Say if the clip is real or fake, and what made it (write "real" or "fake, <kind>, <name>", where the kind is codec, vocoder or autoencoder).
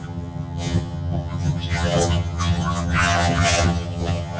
fake, vocoder, HiFi-GAN